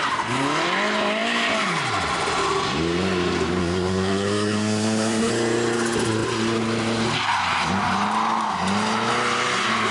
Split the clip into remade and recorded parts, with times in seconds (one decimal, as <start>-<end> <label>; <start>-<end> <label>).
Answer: 0.0-3.6 recorded; 3.6-5.3 remade; 5.3-9.9 recorded